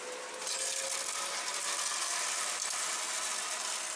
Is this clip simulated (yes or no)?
no